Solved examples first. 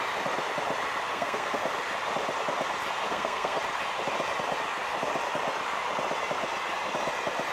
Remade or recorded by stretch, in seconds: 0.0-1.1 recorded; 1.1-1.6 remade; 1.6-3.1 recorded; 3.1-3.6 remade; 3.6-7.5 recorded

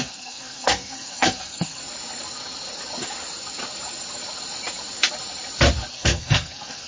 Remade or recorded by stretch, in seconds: 0.0-1.8 remade; 1.8-5.9 recorded; 5.9-6.9 remade